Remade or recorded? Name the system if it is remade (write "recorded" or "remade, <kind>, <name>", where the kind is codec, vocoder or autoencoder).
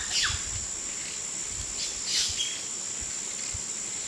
recorded